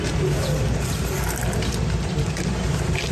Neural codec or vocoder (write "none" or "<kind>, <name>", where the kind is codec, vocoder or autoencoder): none